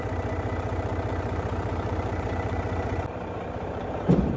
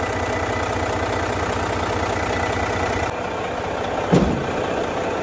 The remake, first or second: first